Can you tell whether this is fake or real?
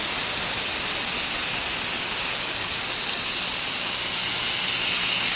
real